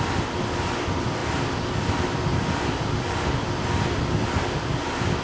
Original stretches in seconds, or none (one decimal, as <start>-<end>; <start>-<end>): 0.0-5.2